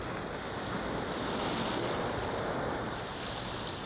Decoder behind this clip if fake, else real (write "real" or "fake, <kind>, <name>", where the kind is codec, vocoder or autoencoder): real